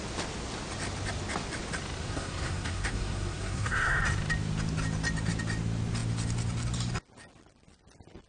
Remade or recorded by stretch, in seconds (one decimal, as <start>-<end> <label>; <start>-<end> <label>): 0.0-2.0 recorded; 2.0-4.0 remade; 4.0-8.3 recorded